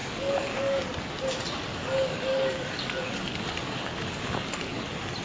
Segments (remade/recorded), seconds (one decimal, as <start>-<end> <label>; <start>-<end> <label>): 0.0-0.8 remade; 0.8-1.7 recorded; 1.7-4.8 remade; 4.8-5.2 recorded